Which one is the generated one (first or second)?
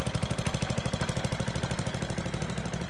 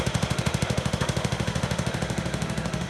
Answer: second